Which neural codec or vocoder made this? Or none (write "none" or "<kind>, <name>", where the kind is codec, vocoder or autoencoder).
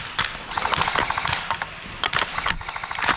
none